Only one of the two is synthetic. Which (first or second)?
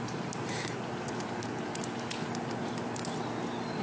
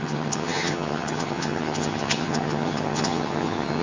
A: second